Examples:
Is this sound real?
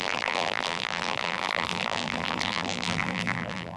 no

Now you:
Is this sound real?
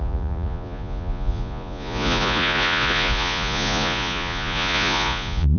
no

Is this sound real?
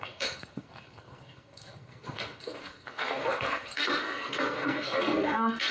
no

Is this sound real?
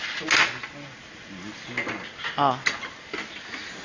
yes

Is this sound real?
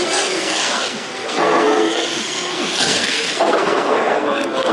no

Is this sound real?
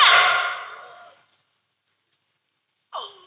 yes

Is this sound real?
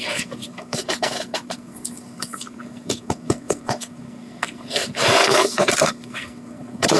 no